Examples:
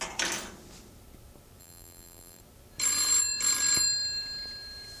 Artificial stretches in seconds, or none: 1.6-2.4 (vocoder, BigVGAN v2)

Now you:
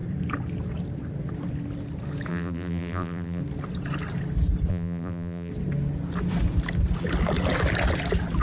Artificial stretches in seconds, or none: 2.3-3.4 (vocoder, BigVGAN v2); 4.7-5.5

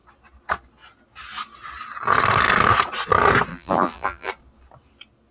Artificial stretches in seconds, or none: 3.5-4.3 (vocoder, BigVGAN v2)

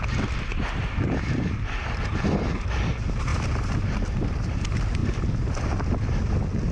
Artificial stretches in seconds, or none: 0.5-2.2 (vocoder, BigVGAN v2); 3.3-4.6

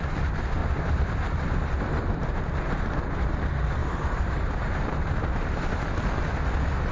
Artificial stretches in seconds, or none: 0.6-1.8 (vocoder, BigVGAN v2); 3.8-6.2